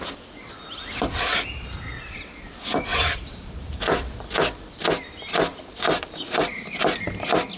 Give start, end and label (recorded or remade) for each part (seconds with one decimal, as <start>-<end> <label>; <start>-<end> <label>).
0.0-2.9 recorded; 2.9-4.2 remade; 4.2-5.5 recorded; 5.5-6.5 remade; 6.5-7.6 recorded